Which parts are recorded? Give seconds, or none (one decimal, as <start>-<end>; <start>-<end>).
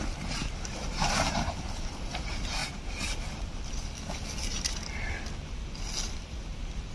0.0-6.9